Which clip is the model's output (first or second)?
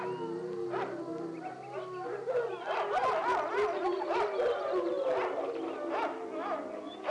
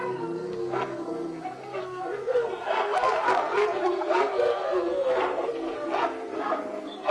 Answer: second